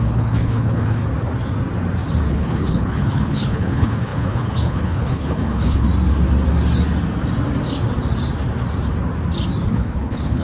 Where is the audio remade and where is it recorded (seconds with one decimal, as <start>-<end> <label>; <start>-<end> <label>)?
0.0-1.0 remade; 1.0-2.3 recorded; 2.3-5.9 remade; 5.9-9.7 recorded; 9.7-10.4 remade